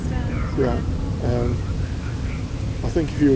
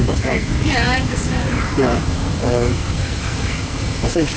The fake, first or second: second